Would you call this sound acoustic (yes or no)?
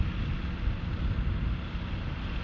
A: yes